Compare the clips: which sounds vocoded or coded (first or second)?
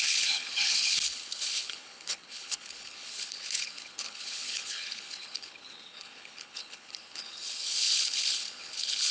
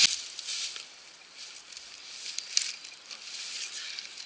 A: first